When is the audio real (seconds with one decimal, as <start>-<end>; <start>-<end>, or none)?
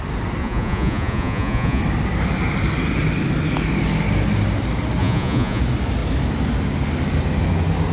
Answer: 0.0-0.4; 1.8-5.0; 5.6-7.9